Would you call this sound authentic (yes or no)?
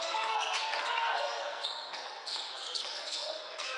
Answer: no